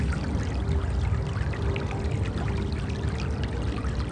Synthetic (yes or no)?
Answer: no